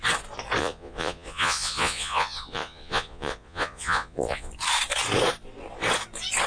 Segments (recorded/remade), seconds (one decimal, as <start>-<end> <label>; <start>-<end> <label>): 0.0-0.6 recorded; 0.6-4.5 remade; 4.5-6.5 recorded